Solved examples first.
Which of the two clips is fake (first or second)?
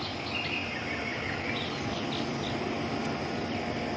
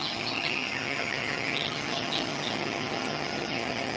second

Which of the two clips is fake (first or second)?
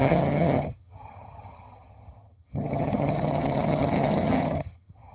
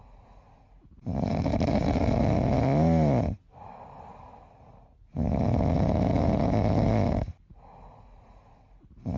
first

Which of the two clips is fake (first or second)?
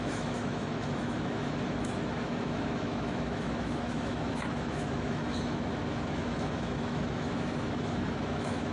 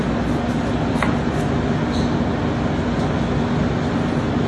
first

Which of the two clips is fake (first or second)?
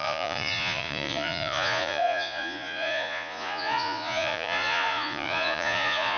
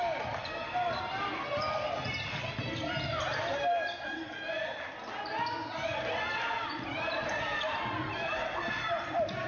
first